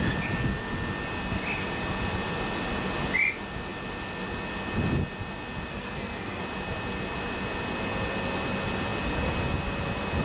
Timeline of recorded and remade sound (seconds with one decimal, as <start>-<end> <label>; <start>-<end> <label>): 0.0-5.7 recorded; 5.7-6.4 remade; 6.4-10.2 recorded